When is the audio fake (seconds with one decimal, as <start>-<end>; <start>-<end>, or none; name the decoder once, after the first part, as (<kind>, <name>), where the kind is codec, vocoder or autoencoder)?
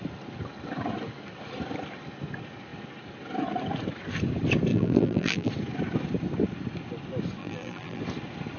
4.7-5.5 (vocoder, BigVGAN v2); 7.4-8.0